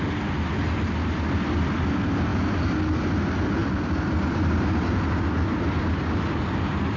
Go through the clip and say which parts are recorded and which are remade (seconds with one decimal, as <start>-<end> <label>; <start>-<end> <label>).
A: 0.0-7.0 recorded